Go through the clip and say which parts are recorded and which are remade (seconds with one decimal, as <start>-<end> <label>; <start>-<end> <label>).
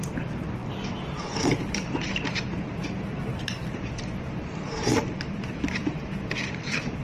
0.0-5.8 remade; 5.8-6.4 recorded; 6.4-7.0 remade